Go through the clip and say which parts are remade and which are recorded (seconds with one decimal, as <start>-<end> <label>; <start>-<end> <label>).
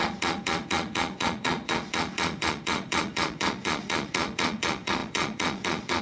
0.0-6.0 remade